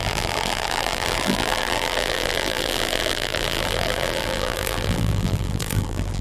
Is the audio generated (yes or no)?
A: yes